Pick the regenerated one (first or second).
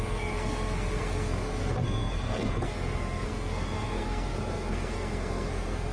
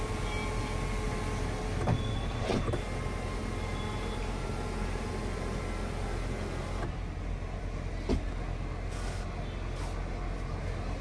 first